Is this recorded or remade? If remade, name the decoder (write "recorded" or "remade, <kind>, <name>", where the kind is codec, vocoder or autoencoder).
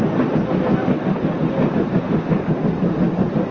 recorded